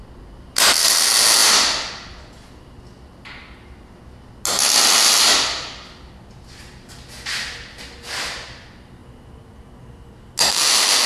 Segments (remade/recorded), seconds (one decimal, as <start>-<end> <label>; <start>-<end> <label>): 0.0-1.4 recorded; 1.4-1.9 remade; 1.9-11.1 recorded